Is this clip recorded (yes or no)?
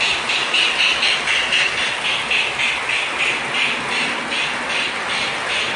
yes